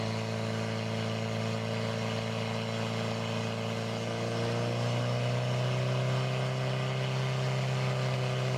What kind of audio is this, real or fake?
real